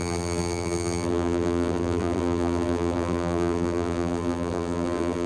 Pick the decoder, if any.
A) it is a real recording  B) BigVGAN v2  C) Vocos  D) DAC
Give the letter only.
B